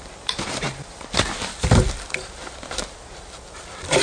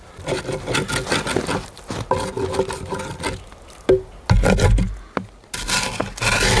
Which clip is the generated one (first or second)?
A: first